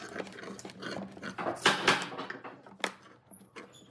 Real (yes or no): yes